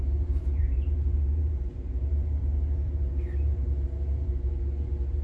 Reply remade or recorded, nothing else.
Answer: remade